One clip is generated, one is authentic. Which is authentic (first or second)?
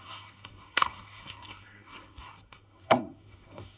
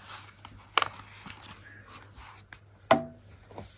second